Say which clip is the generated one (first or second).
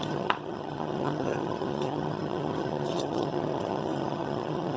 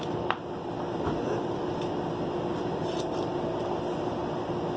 first